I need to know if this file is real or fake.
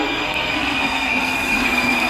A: fake